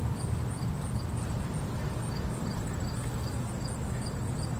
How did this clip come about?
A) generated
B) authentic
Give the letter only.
B